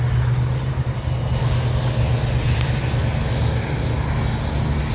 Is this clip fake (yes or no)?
no